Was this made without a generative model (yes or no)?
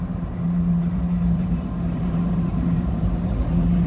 no